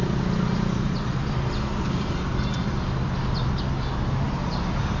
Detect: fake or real real